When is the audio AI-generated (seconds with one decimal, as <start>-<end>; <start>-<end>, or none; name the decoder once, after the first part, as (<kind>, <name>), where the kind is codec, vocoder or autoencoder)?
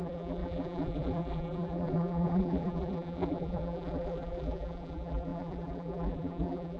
0.0-6.8 (vocoder, BigVGAN v2)